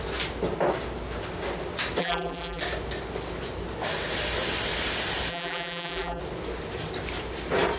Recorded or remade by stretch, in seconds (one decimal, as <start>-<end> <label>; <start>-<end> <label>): 0.0-2.0 recorded; 2.0-2.6 remade; 2.6-5.3 recorded; 5.3-6.2 remade; 6.2-7.8 recorded